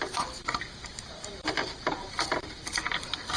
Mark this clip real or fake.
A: fake